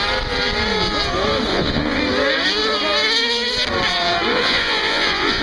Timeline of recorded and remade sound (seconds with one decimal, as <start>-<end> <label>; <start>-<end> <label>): 0.0-1.5 recorded; 1.5-2.0 remade; 2.0-4.3 recorded; 4.3-5.4 remade